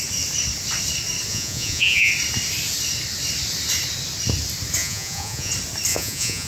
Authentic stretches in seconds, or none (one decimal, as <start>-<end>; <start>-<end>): 0.0-1.3; 2.1-4.8; 5.5-5.9